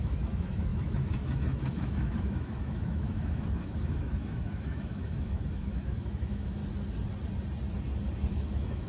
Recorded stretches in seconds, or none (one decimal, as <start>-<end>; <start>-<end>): 6.6-8.3